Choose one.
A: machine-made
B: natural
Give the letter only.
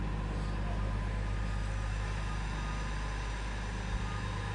B